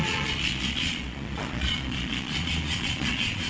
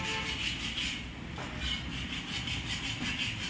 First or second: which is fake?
first